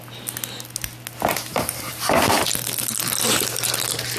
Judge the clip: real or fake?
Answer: real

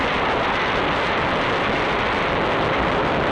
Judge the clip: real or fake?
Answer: real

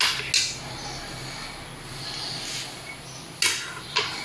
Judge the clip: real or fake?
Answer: real